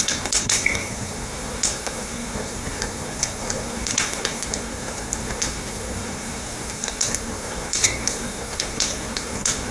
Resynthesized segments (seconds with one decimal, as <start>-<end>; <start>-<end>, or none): 0.0-9.7